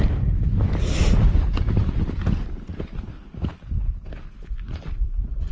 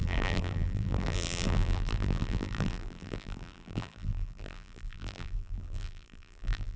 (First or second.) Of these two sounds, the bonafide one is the first